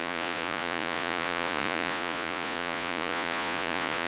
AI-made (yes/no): yes